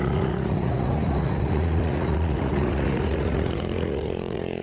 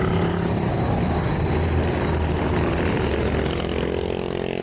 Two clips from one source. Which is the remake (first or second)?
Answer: first